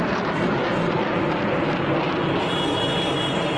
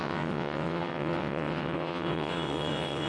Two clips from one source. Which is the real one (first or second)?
first